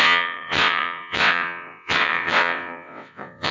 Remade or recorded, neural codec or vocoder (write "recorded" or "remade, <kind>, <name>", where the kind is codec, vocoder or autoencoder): remade, vocoder, WaveNeXt